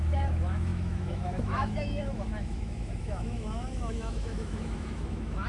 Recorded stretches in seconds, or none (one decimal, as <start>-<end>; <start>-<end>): none